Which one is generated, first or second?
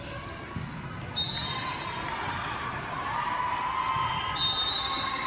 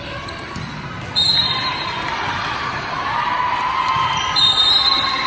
second